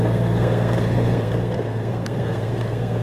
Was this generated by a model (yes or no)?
yes